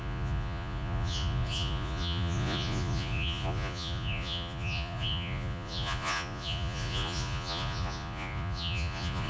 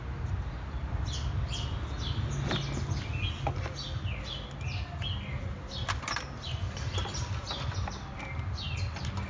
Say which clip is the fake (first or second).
first